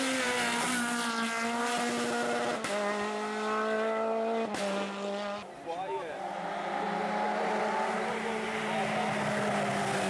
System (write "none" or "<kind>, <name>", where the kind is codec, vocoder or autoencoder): none